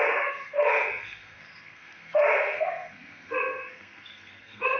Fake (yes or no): yes